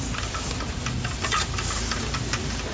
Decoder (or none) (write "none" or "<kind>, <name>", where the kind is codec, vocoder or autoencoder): none